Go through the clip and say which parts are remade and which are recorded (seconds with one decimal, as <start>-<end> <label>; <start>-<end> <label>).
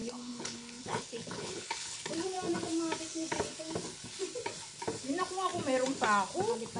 0.0-2.1 remade; 2.1-6.8 recorded